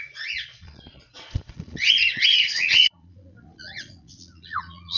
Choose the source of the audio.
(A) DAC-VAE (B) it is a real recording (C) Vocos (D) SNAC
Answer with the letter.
C